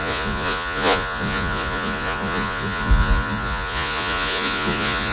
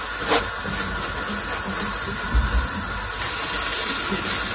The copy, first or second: first